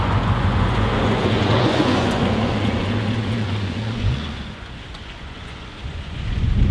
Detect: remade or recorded remade